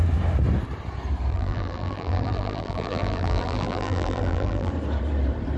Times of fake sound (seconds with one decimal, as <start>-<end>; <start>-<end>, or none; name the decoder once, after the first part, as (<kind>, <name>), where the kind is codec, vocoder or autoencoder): 1.3-4.7 (vocoder, BigVGAN v2)